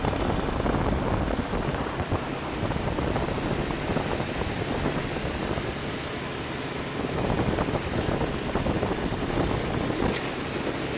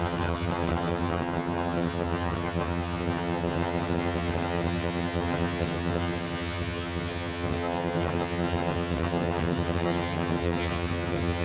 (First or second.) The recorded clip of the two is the first